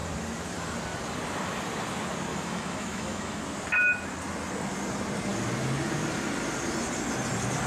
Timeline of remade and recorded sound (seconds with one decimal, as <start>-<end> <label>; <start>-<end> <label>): 0.0-2.3 recorded; 2.3-3.4 remade; 3.4-7.7 recorded